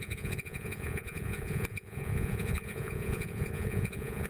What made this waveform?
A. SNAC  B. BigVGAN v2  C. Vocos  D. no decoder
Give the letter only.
C